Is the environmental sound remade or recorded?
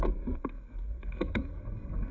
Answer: remade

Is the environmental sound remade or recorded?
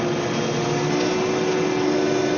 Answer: recorded